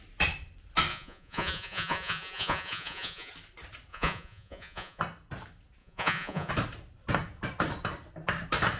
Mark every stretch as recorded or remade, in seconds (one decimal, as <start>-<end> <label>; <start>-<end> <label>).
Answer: 0.0-0.9 recorded; 0.9-3.3 remade; 3.3-3.9 recorded; 3.9-5.0 remade; 5.0-5.8 recorded; 5.8-6.5 remade; 6.5-8.8 recorded